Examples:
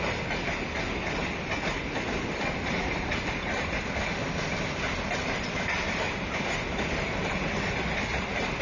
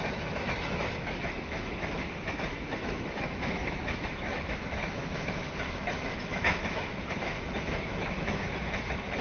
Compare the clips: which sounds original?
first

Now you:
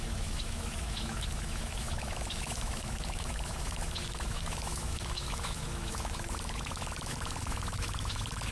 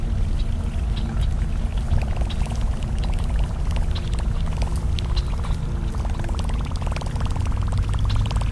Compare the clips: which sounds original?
second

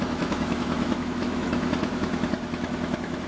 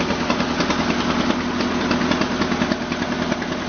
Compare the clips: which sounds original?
second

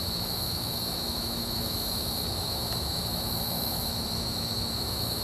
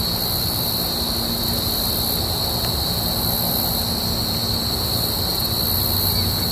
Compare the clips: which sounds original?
second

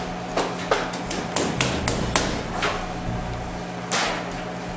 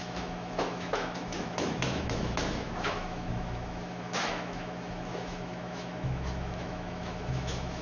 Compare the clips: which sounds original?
first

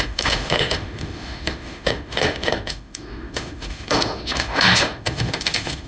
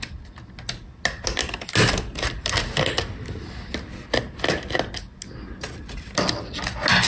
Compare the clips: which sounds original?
second